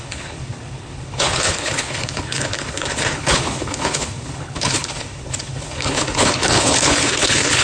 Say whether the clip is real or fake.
fake